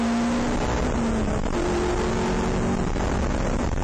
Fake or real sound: real